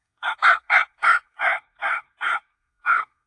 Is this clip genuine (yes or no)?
no